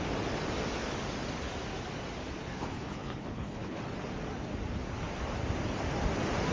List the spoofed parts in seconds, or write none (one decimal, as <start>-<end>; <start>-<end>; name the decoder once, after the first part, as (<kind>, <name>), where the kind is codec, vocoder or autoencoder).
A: 2.4-3.8 (codec, HILCodec)